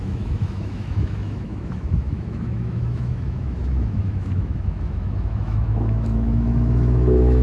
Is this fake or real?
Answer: fake